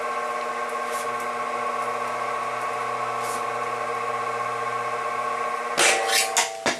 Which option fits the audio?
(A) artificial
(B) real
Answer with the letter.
B